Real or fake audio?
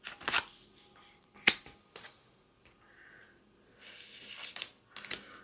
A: real